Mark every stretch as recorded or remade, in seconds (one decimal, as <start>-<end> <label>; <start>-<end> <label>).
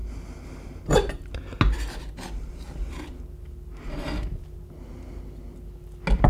0.0-6.3 recorded